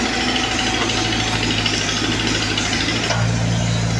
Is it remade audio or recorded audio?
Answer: recorded